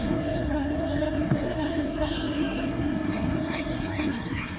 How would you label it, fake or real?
fake